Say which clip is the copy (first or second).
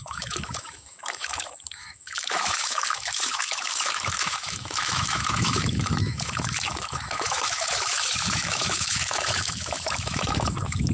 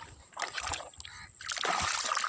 first